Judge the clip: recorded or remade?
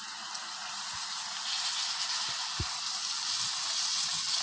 recorded